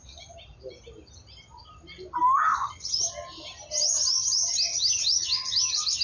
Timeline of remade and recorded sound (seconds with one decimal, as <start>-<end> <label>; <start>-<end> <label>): 0.0-2.6 recorded; 2.6-3.1 remade; 3.1-4.7 recorded; 4.7-6.0 remade